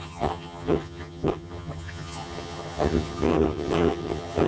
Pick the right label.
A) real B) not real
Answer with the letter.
B